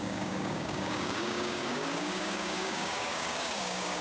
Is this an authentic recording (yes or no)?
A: no